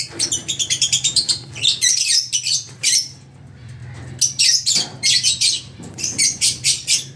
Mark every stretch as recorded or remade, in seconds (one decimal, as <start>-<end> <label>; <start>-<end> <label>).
0.0-3.8 remade; 3.8-4.4 recorded; 4.4-7.2 remade